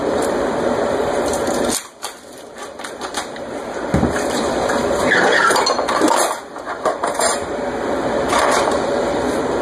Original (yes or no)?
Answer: no